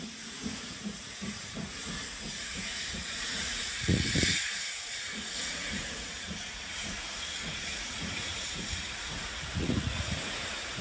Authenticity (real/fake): fake